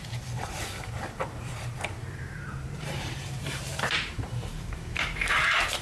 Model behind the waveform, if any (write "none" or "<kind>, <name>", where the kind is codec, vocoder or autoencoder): vocoder, BigVGAN v2